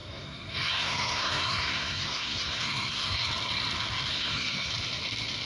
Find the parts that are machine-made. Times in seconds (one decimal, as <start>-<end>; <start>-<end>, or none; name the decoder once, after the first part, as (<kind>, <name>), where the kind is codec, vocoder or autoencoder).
0.0-3.3 (codec, SNAC); 4.1-4.7